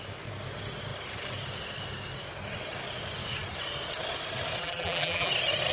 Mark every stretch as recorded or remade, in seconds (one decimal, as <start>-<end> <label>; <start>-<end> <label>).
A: 0.0-4.6 recorded; 4.6-5.3 remade; 5.3-5.7 recorded